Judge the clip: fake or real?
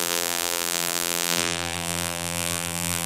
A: fake